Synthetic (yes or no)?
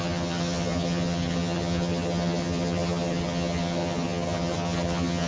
yes